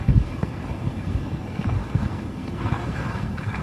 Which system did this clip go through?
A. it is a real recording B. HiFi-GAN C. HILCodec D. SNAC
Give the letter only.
D